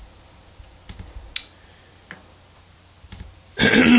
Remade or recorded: recorded